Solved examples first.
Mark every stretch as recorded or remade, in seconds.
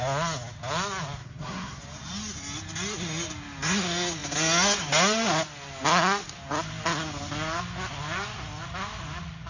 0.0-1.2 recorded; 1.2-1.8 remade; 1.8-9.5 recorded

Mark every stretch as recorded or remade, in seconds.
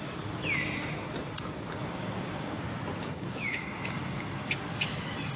0.0-1.8 recorded; 1.8-2.6 remade; 2.6-3.0 recorded; 3.0-4.5 remade; 4.5-5.4 recorded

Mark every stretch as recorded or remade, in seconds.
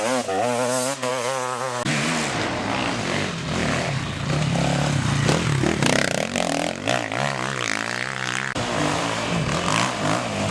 0.0-10.5 recorded